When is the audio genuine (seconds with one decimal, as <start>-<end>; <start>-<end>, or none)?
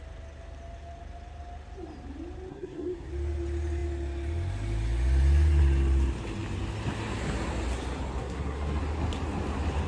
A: 0.0-2.5; 3.1-8.2; 8.8-9.9